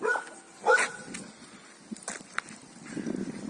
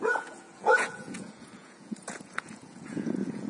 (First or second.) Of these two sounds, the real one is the first